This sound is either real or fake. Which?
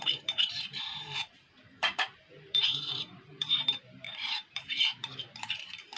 fake